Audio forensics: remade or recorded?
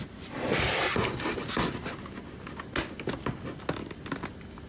recorded